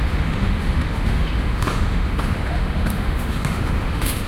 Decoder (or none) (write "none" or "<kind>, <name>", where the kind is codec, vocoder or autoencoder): autoencoder, DAC-VAE